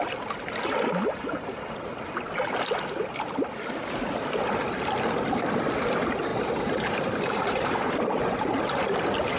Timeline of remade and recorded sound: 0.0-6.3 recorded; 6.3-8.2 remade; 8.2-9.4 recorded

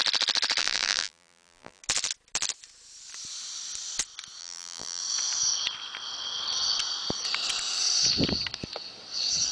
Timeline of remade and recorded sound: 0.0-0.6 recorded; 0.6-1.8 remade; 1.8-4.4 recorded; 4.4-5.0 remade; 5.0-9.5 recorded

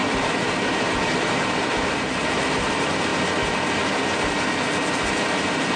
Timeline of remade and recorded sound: 0.0-3.1 remade; 3.1-5.0 recorded; 5.0-5.8 remade